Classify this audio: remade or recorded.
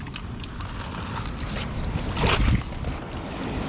recorded